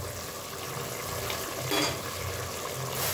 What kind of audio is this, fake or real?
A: real